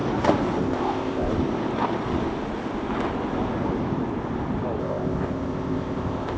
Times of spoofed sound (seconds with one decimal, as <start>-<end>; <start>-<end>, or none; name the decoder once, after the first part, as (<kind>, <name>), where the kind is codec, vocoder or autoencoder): 0.6-1.3 (codec, ZipCodec); 4.8-6.4